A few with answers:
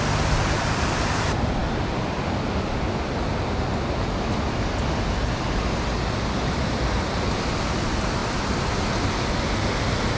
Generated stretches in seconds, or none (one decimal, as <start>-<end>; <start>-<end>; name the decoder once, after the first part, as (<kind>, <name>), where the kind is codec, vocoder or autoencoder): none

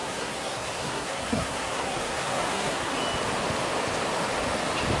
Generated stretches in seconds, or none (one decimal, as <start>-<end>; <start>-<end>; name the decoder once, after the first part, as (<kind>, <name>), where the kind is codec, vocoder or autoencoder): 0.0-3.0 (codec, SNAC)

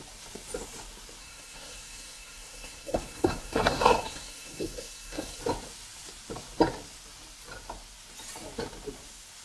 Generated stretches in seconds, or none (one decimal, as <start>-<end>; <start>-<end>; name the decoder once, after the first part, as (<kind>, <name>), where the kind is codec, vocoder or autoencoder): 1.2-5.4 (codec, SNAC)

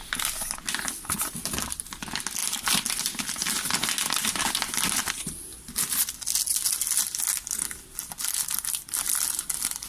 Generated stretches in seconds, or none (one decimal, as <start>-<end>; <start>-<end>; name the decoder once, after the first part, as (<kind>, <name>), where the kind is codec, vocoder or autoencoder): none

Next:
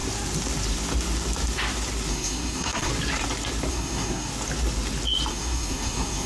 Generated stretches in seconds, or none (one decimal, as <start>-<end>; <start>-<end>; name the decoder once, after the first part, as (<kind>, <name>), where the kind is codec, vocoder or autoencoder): 2.1-2.9 (codec, SNAC); 3.7-4.3; 5.3-6.3

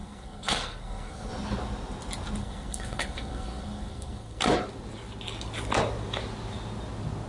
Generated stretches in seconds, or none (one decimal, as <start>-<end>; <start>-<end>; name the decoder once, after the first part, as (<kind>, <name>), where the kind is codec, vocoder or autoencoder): 0.0-1.3 (codec, SNAC); 2.4-4.4